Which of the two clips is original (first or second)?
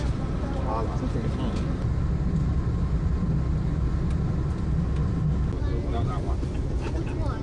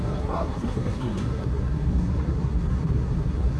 first